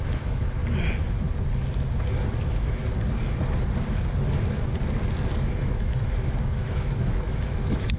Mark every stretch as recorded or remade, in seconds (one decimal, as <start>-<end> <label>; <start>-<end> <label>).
0.0-0.6 remade; 0.6-2.4 recorded; 2.4-2.8 remade; 2.8-5.4 recorded; 5.4-8.0 remade